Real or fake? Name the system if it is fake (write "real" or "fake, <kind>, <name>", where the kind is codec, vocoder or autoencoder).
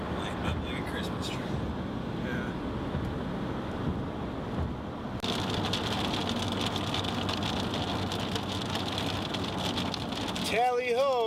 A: real